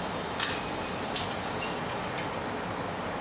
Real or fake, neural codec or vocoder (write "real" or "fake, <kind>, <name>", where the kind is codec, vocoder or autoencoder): real